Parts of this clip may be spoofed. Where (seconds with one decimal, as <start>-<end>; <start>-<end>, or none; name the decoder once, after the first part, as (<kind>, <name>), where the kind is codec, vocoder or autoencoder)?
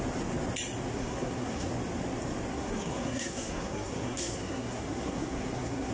0.9-1.7 (codec, SNAC); 2.5-5.9